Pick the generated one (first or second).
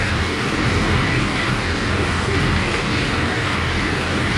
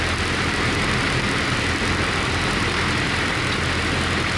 first